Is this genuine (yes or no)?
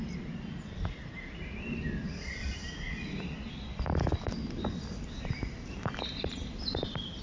yes